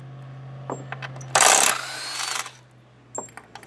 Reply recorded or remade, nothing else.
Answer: recorded